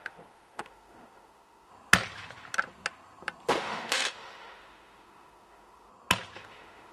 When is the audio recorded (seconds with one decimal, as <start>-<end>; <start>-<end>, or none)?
1.7-3.5; 5.9-6.4